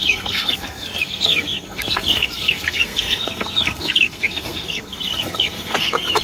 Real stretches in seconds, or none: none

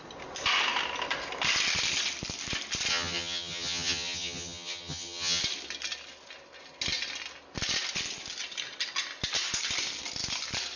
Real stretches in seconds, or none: 0.0-2.9; 5.4-10.8